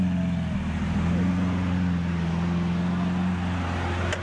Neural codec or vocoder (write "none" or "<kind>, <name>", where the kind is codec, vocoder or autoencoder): none